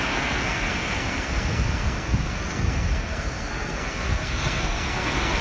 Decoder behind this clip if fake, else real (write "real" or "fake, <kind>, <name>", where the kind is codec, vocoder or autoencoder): fake, codec, SNAC